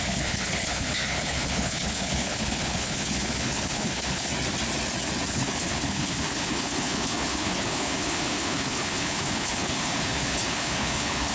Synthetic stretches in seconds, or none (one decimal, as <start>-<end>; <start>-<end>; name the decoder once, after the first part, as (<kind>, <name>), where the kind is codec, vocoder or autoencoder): 0.0-4.3 (codec, HILCodec); 5.3-11.3